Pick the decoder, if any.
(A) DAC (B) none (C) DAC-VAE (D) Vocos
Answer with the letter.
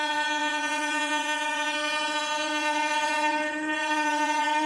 D